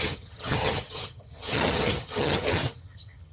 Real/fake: fake